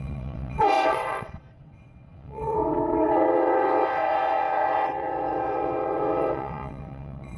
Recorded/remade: remade